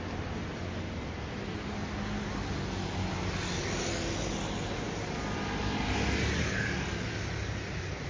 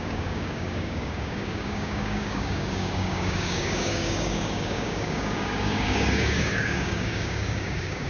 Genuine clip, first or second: first